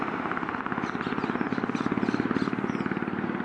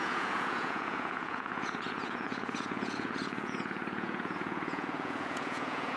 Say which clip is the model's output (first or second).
second